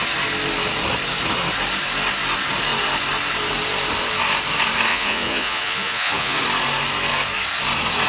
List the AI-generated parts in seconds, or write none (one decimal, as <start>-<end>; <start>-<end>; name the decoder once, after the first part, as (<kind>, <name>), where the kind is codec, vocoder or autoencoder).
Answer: 4.9-6.4 (vocoder, Vocos)